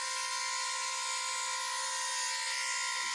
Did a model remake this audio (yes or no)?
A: no